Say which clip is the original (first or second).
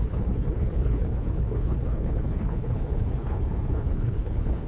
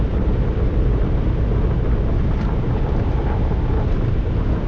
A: second